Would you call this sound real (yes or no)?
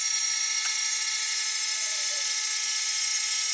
no